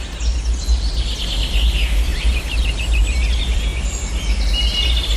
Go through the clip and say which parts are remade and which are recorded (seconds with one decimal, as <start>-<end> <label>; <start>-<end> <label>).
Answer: 0.0-2.1 recorded; 2.1-3.0 remade; 3.0-5.2 recorded